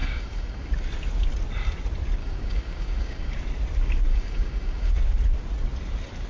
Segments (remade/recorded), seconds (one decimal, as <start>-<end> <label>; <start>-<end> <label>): 0.0-0.7 remade; 0.7-2.2 recorded; 2.2-3.3 remade; 3.3-4.1 recorded; 4.1-4.9 remade; 4.9-6.3 recorded